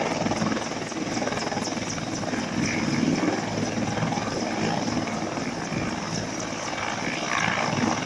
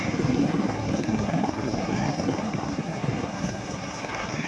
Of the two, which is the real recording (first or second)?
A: first